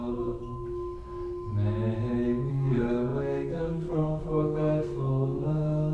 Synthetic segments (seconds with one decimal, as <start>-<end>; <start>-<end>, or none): 0.0-0.4; 2.5-5.9